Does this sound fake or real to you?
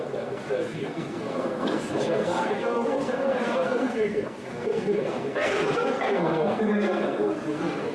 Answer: fake